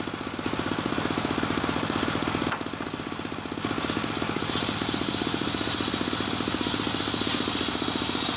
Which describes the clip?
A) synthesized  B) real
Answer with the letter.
B